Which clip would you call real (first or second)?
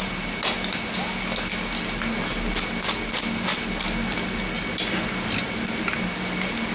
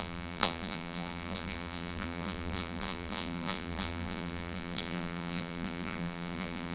first